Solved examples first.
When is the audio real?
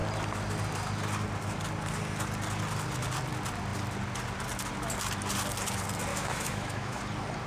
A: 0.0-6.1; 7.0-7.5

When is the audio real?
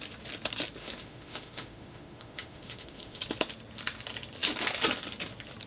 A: 0.0-0.8; 3.2-5.7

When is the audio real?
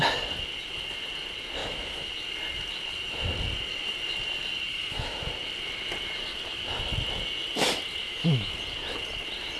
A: 0.0-1.6; 2.1-4.7; 5.3-8.0; 8.5-9.6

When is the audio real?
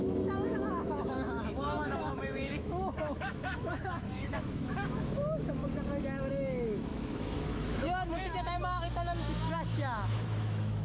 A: 5.6-6.3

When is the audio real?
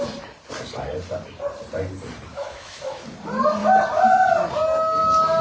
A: 0.0-2.3; 3.0-5.4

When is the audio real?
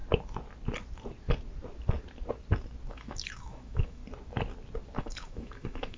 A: 0.0-2.9; 4.0-5.0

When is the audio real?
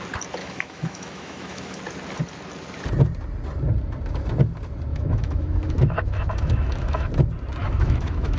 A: 0.0-0.4; 1.8-4.9; 7.1-7.6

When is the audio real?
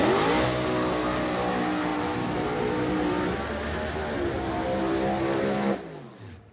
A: 0.0-6.5